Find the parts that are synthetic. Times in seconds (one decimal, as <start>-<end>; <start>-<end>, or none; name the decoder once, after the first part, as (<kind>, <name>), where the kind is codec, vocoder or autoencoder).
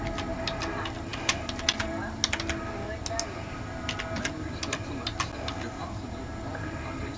none